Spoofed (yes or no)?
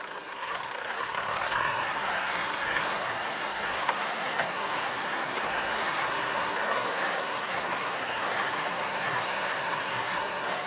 yes